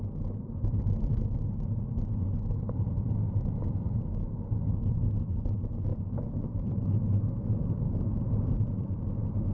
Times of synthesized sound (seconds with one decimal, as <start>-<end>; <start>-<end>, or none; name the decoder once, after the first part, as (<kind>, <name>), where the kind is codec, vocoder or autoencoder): 5.9-8.9 (vocoder, BigVGAN v2)